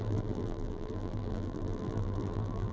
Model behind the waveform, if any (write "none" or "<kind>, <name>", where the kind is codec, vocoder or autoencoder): vocoder, BigVGAN v2